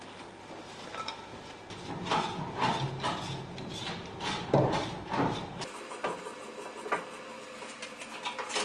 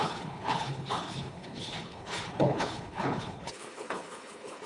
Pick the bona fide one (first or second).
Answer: first